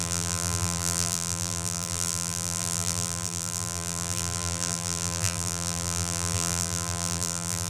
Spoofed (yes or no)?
yes